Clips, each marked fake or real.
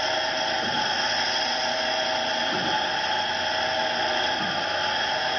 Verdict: real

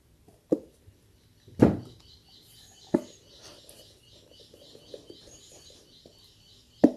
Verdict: real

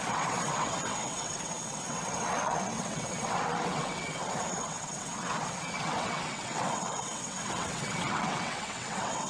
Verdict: fake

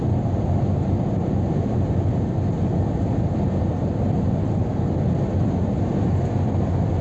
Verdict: real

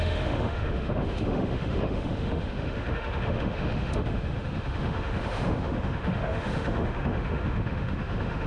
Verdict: fake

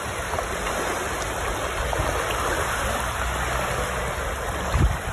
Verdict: real